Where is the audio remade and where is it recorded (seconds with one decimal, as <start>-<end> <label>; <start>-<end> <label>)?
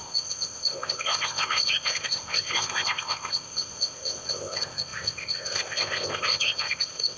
0.0-7.2 remade